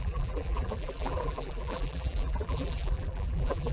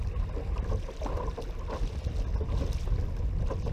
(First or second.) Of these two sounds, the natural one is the second